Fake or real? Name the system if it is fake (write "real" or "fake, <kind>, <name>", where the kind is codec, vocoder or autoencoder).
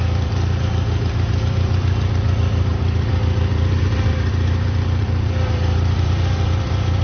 fake, vocoder, BigVGAN v2